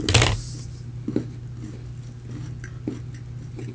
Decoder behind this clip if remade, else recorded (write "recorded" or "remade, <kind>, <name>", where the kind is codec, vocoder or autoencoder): recorded